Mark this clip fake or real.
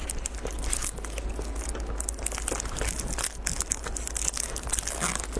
real